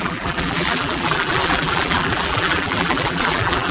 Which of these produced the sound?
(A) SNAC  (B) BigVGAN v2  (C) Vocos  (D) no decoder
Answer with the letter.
B